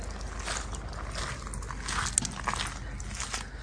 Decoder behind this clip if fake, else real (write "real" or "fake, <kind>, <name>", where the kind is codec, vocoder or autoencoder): real